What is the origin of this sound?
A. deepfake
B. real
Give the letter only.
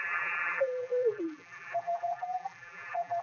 A